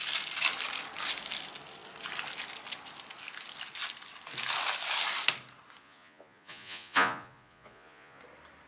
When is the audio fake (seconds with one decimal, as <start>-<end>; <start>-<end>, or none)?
5.8-8.2